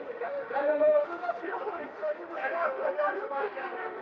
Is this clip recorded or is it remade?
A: remade